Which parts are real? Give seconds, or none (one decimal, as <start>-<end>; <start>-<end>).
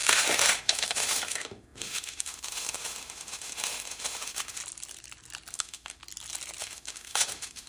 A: 4.6-5.5; 6.0-6.6